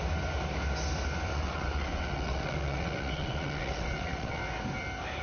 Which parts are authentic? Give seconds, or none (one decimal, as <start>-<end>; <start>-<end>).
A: 0.0-1.3; 4.4-5.2